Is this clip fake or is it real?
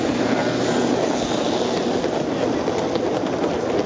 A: real